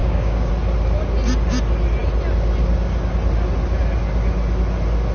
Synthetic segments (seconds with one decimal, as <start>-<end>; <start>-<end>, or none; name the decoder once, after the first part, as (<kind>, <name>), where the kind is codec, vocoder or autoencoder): 0.0-0.5 (codec, DAC)